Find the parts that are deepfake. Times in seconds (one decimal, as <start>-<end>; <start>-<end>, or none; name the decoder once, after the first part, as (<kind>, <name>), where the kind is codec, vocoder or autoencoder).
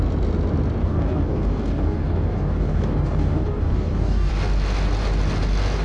0.8-4.3 (codec, DAC)